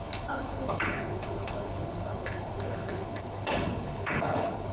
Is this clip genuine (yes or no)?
no